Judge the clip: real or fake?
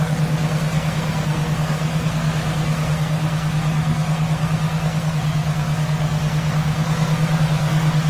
fake